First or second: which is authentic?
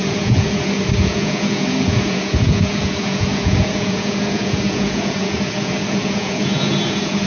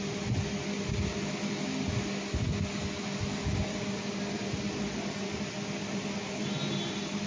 second